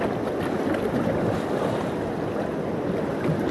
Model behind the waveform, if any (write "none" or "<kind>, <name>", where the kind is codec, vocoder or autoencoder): none